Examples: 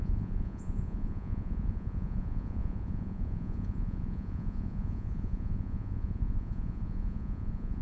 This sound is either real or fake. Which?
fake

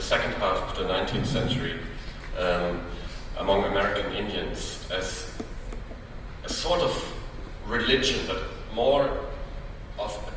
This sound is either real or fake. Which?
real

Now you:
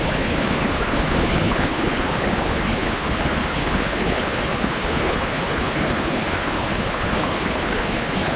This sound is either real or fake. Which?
fake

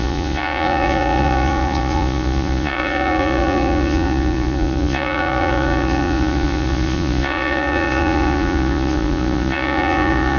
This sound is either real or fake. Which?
fake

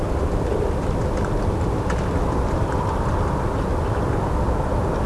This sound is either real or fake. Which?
real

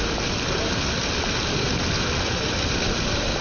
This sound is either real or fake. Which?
fake